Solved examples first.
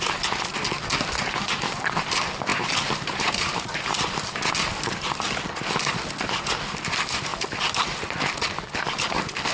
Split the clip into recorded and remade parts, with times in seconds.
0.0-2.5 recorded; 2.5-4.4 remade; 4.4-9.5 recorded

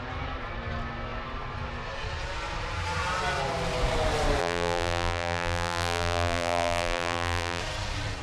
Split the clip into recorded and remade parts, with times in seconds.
0.0-4.4 recorded; 4.4-7.6 remade; 7.6-8.2 recorded

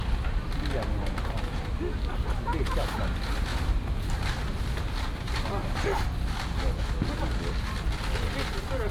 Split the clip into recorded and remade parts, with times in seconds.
0.0-3.5 recorded; 3.5-4.6 remade; 4.6-5.6 recorded; 5.6-6.8 remade; 6.8-8.9 recorded

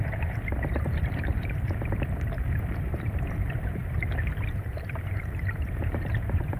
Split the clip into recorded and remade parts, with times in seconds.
0.0-3.8 remade; 3.8-4.3 recorded; 4.3-6.6 remade